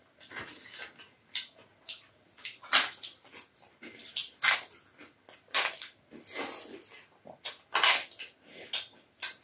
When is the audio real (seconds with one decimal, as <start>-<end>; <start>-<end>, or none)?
0.0-9.4